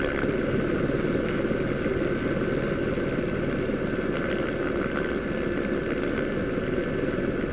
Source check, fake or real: real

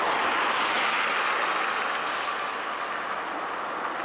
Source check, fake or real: real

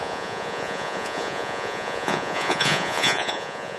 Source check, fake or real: fake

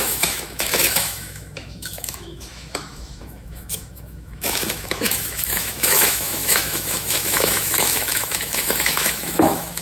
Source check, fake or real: fake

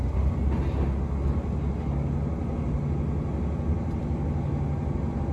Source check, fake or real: real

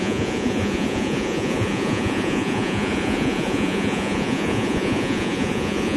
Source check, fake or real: fake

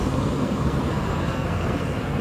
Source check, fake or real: fake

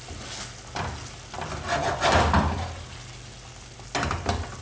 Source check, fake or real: real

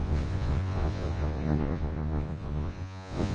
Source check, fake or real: fake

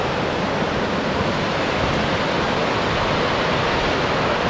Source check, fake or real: real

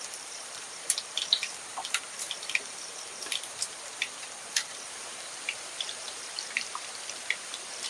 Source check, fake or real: fake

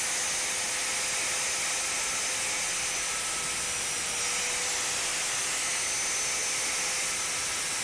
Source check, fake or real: real